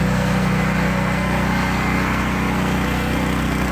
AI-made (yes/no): yes